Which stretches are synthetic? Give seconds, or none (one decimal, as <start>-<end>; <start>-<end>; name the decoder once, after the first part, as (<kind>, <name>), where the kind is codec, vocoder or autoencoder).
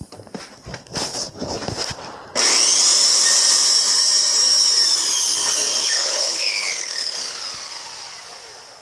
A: 1.1-1.6 (codec, HILCodec); 5.8-7.3